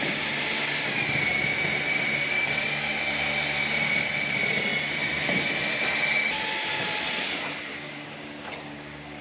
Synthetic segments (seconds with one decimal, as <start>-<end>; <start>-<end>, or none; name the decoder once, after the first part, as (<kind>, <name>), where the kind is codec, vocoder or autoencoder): 2.3-2.9 (codec, DAC); 7.7-9.2